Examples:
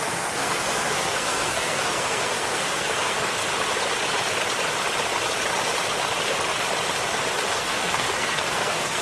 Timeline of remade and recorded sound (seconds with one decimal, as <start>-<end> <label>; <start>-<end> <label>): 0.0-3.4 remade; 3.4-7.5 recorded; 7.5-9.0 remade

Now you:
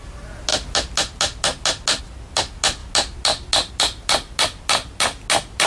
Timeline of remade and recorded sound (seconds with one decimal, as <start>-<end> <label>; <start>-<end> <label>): 0.0-5.7 recorded

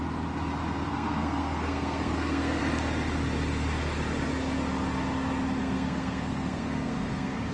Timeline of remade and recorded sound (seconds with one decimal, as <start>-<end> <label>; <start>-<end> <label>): 0.0-0.9 recorded; 0.9-2.6 remade; 2.6-5.6 recorded; 5.6-7.5 remade

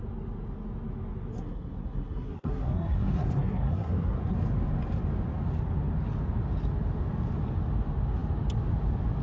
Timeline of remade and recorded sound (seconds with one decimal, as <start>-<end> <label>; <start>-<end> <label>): 0.0-1.3 recorded; 1.3-4.2 remade; 4.2-9.2 recorded

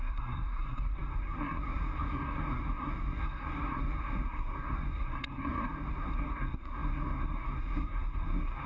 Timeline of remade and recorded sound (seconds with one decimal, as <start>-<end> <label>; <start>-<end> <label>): 0.0-8.7 remade